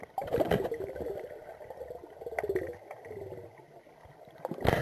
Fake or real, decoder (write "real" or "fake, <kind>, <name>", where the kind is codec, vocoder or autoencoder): real